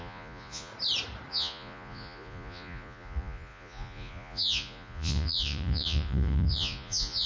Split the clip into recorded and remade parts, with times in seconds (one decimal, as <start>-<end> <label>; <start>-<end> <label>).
0.0-0.7 remade; 0.7-1.3 recorded; 1.3-7.3 remade